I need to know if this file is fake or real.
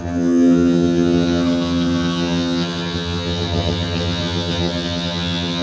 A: fake